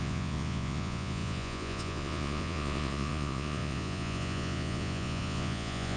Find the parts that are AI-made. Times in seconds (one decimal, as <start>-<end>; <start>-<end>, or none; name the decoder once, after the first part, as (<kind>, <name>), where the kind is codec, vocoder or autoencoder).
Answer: 0.0-6.0 (vocoder, Vocos)